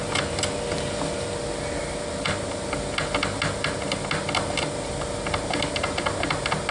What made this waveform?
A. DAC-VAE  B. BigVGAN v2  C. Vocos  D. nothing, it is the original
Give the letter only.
D